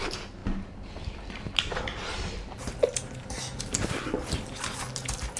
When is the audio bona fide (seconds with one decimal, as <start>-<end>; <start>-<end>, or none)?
0.0-5.4